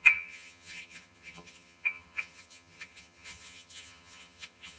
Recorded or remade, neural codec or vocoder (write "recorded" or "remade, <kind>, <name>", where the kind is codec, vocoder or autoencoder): remade, vocoder, HiFi-GAN